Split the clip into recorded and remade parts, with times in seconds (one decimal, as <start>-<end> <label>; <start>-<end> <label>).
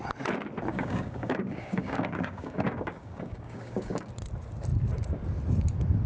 0.0-0.7 recorded; 0.7-4.1 remade; 4.1-6.1 recorded